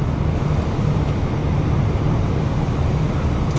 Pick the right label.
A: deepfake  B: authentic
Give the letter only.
B